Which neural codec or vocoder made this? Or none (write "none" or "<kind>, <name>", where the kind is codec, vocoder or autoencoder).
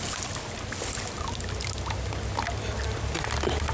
none